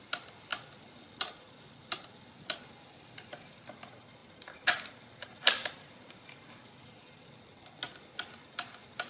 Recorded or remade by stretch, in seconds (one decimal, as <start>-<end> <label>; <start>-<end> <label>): 0.0-9.1 recorded